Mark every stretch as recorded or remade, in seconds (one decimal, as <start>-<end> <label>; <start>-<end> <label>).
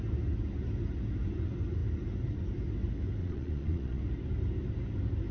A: 0.0-3.2 recorded; 3.2-4.0 remade; 4.0-5.3 recorded